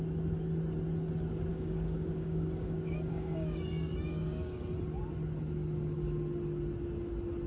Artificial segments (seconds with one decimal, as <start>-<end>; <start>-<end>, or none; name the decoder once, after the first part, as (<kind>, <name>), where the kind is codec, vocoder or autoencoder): 1.5-4.6 (codec, DAC)